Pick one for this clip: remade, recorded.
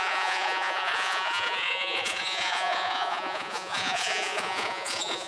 remade